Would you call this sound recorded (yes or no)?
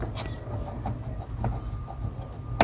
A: yes